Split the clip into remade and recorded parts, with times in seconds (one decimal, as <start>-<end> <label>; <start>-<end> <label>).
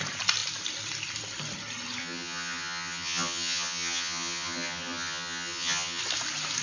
0.0-2.0 recorded; 2.0-6.0 remade; 6.0-6.6 recorded